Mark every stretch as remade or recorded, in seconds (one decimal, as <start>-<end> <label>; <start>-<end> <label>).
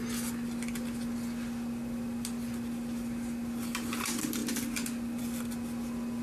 0.0-6.2 recorded